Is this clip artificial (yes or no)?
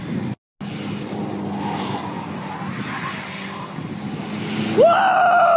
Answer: no